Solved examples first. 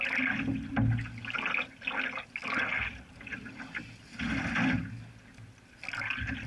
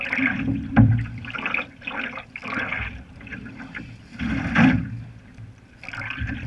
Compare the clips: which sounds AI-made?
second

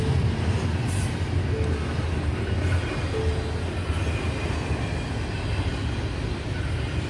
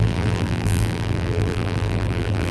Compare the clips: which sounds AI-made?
second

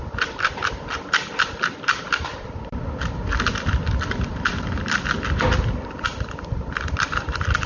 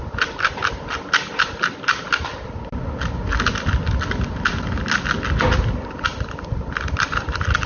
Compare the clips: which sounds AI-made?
first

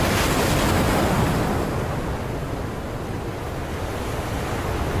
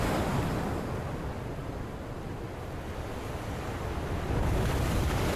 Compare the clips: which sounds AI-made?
second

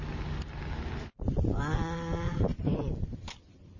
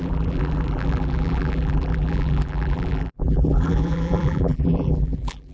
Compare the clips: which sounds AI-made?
second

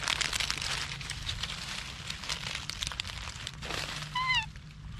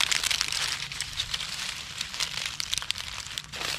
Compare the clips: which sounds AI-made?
second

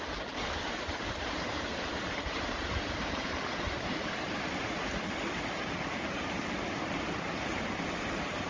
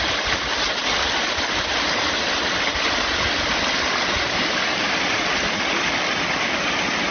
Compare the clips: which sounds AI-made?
first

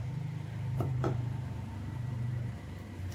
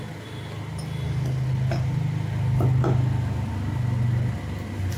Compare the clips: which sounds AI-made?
first